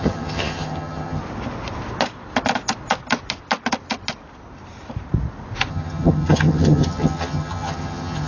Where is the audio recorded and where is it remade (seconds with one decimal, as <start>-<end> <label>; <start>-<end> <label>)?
0.0-1.2 remade; 1.2-5.7 recorded; 5.7-8.3 remade